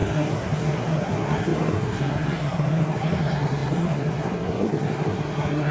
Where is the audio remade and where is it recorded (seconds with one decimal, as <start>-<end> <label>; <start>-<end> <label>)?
0.0-5.7 remade